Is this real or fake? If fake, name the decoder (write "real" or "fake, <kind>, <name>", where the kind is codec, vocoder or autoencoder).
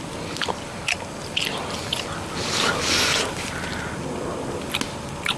real